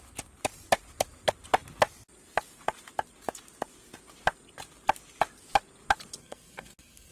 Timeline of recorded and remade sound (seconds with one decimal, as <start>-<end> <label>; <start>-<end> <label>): 0.0-6.2 recorded; 6.2-7.1 remade

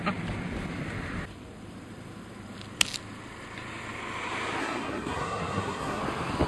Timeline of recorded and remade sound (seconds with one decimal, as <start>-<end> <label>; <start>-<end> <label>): 0.0-4.6 recorded; 4.6-6.0 remade; 6.0-6.5 recorded

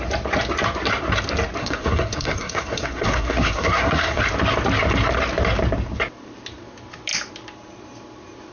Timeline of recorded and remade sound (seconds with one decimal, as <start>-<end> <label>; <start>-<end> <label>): 0.0-1.6 recorded; 1.6-4.2 remade; 4.2-8.5 recorded

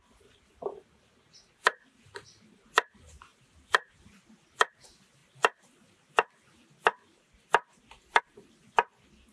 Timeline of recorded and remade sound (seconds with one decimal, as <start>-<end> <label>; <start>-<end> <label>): 0.0-9.3 recorded